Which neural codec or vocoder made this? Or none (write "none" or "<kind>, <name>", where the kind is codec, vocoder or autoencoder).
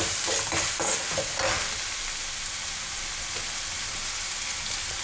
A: none